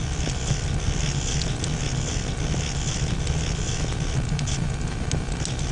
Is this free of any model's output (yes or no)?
yes